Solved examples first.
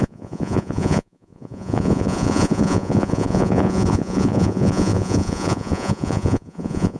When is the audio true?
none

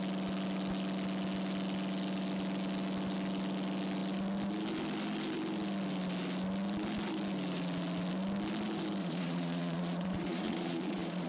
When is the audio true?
0.0-9.0

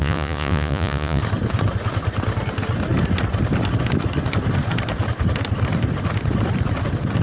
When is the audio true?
1.2-7.2

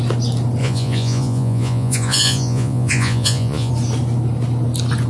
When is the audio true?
0.0-0.6; 3.7-5.1